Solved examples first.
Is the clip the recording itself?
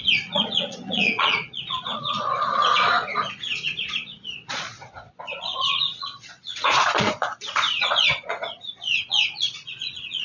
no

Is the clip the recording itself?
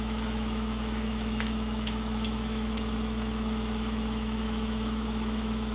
no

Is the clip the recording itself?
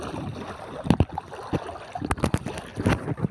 yes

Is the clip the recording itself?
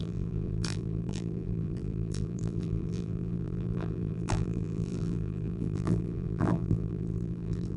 no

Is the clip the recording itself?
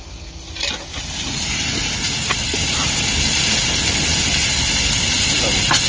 yes